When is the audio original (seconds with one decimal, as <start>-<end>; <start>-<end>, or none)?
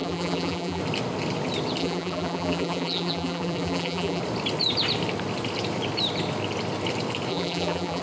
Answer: 0.8-1.8; 4.2-7.3